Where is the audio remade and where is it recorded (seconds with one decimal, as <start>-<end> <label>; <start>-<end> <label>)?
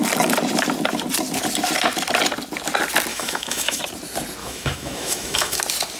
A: 0.0-3.1 recorded; 3.1-3.8 remade; 3.8-4.4 recorded; 4.4-5.6 remade; 5.6-6.0 recorded